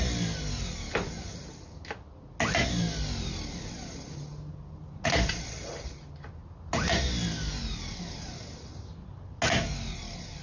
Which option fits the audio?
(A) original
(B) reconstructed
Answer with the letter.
A